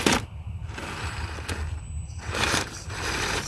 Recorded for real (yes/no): yes